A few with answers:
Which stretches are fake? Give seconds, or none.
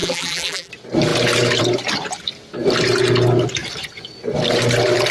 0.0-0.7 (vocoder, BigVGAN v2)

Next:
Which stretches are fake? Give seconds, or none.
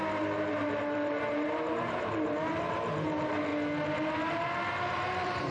0.0-3.5 (vocoder, BigVGAN v2); 4.3-5.5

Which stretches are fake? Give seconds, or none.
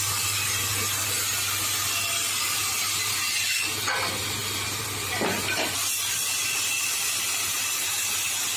4.4-5.1 (vocoder, BigVGAN v2)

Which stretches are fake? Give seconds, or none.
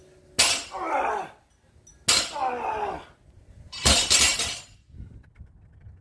none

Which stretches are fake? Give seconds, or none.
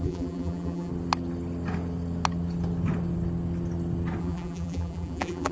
0.0-0.9 (vocoder, BigVGAN v2); 4.2-5.5